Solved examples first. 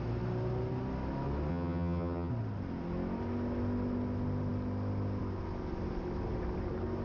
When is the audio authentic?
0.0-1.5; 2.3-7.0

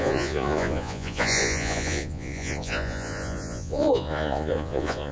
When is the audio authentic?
none

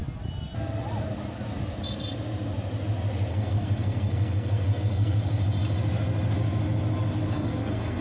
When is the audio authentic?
0.0-3.3; 5.3-7.3